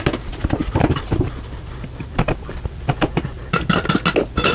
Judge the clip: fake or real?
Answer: real